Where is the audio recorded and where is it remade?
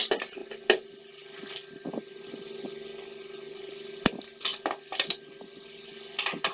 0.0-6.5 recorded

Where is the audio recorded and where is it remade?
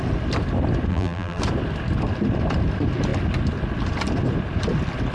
0.0-0.9 recorded; 0.9-1.4 remade; 1.4-5.1 recorded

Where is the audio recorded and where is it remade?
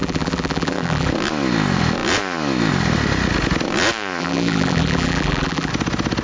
0.0-1.1 remade; 1.1-4.2 recorded; 4.2-5.7 remade; 5.7-6.2 recorded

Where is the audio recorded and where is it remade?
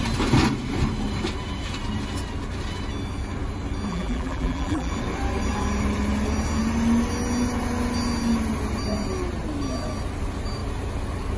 0.0-3.9 recorded; 3.9-4.9 remade; 4.9-11.4 recorded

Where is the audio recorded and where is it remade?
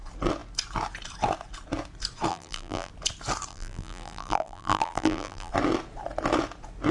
0.0-2.3 recorded; 2.3-2.9 remade; 2.9-3.5 recorded; 3.5-5.5 remade; 5.5-6.9 recorded